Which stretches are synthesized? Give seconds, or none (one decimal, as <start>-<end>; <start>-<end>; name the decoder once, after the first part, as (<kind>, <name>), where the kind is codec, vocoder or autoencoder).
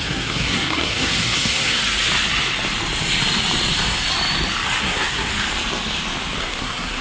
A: 0.0-1.8 (codec, SNAC); 4.8-5.3; 6.4-7.0